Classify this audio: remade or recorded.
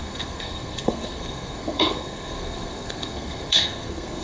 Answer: remade